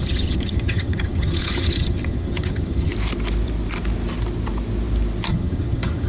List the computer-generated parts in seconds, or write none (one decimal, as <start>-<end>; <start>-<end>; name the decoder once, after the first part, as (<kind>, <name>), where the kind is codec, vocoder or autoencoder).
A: 0.0-2.9 (vocoder, HiFi-GAN); 5.3-6.1